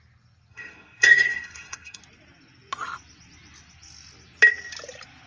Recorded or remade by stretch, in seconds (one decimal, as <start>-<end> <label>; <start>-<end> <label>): 0.0-0.5 recorded; 0.5-2.0 remade; 2.0-5.3 recorded